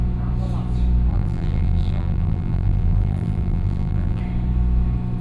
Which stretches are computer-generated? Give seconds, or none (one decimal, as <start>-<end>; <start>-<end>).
1.1-4.2